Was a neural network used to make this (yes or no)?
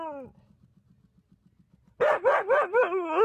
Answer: no